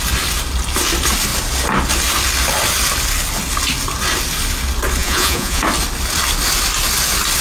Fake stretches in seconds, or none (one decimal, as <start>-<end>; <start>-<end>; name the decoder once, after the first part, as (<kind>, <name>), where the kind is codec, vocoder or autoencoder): 5.0-5.6 (vocoder, Vocos)